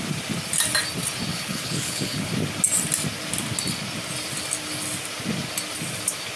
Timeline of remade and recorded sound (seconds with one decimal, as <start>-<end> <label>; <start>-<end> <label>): 0.0-1.3 recorded; 1.3-2.3 remade; 2.3-6.4 recorded